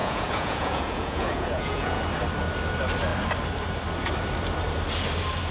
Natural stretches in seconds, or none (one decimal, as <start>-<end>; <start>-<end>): 2.0-5.5